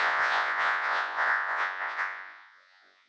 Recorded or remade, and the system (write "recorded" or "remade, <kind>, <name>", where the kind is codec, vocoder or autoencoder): remade, vocoder, Vocos